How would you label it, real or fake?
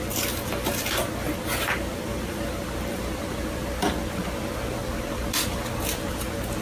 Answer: real